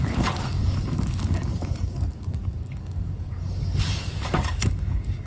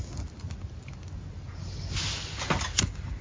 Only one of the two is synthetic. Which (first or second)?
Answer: first